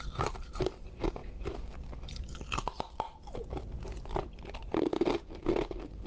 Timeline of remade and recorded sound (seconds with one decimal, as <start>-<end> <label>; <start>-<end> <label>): 0.0-6.1 recorded